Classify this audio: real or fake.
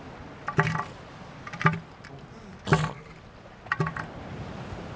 real